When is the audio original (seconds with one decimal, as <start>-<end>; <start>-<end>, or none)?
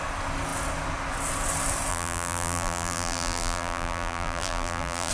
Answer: 0.0-1.9